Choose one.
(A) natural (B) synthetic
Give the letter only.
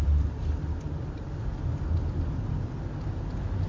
A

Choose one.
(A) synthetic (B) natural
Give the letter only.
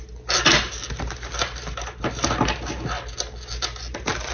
B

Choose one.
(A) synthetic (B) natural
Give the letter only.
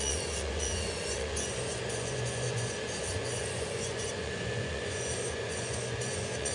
A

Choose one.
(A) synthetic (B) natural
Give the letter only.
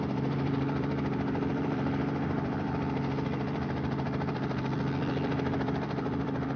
A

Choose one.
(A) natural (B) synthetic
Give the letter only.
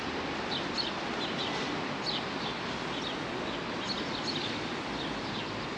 A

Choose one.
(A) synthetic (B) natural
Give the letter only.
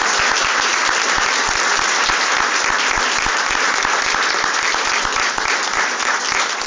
B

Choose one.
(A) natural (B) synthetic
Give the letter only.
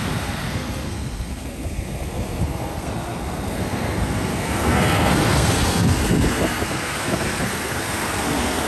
B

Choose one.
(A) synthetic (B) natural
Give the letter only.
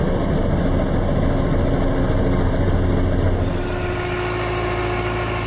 B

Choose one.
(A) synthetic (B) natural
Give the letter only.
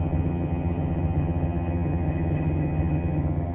A